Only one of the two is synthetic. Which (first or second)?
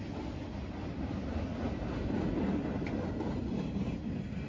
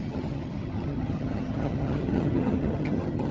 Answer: second